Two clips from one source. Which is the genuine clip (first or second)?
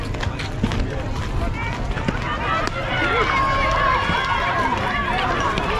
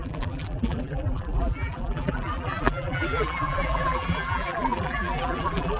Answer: first